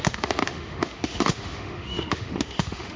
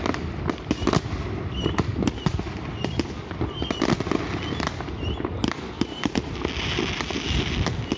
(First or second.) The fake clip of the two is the first